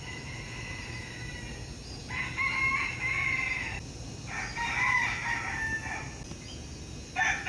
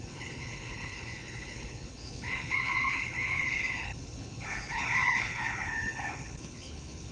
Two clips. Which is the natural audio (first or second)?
first